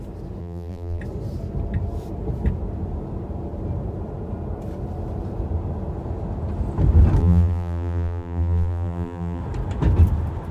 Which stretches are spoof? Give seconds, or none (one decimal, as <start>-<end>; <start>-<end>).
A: 0.4-1.0; 7.2-9.4